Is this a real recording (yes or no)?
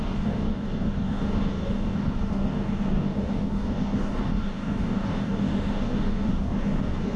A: no